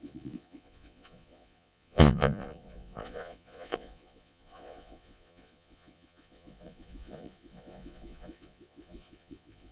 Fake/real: fake